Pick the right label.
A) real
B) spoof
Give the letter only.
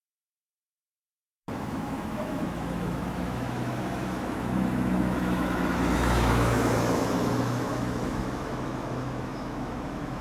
B